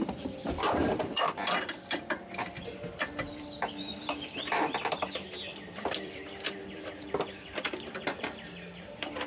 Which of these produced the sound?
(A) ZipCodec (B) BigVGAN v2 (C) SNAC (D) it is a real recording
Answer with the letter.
B